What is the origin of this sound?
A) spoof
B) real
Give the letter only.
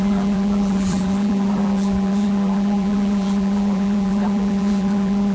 A